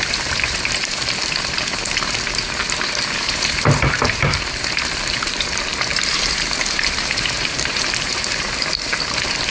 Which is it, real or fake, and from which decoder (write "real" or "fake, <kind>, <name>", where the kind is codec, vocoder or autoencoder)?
fake, vocoder, BigVGAN v2